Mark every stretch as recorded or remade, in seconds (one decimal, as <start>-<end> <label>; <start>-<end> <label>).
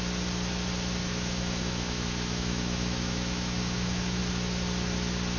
0.0-1.0 recorded; 1.0-4.2 remade; 4.2-5.4 recorded